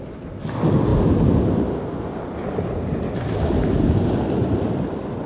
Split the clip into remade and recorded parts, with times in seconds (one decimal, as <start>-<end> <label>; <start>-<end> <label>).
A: 0.0-5.3 recorded